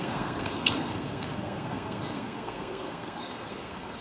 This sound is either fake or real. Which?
fake